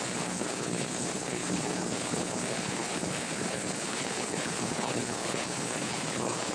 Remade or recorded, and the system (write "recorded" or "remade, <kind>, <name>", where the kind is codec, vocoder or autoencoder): remade, codec, HILCodec